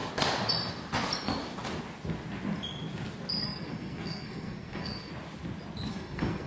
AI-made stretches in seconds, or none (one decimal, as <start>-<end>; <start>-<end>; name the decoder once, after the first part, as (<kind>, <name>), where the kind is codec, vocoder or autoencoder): 3.4-5.1 (codec, SNAC); 5.9-6.5